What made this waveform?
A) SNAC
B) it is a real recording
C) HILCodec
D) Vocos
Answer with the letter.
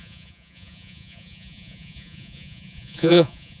D